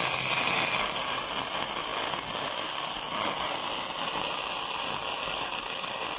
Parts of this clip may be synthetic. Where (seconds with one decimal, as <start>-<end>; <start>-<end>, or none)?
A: none